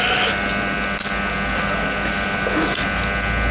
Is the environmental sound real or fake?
real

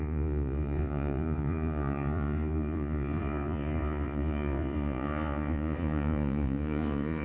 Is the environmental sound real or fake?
fake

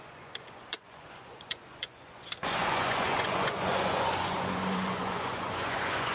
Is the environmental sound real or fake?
fake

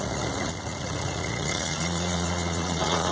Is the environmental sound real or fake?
fake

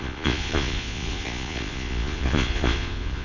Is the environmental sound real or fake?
fake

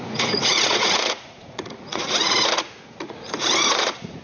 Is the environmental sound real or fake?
fake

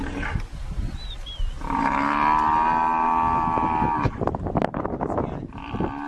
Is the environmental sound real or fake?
real